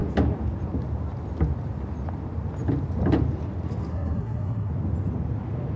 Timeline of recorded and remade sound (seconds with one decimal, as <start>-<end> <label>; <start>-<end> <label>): 0.0-3.9 recorded; 3.9-4.7 remade; 4.7-5.8 recorded